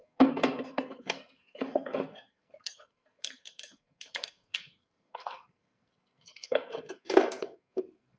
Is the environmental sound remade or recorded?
remade